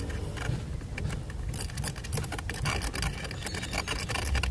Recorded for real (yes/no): yes